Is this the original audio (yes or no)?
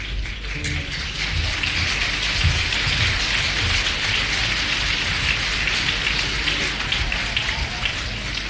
yes